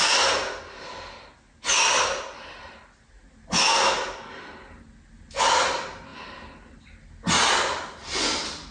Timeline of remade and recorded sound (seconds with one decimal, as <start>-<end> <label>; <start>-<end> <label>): 0.0-8.7 recorded